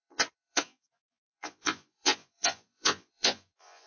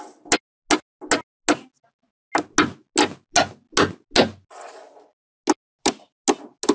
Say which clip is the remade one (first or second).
first